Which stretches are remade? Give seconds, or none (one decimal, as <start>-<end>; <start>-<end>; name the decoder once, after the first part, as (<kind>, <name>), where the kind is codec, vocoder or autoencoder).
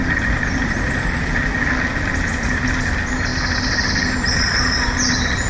none